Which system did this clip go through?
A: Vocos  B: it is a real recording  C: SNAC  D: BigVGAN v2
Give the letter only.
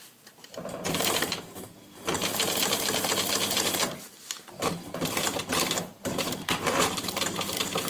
D